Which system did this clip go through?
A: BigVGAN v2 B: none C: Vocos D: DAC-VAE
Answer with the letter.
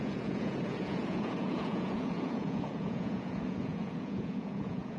C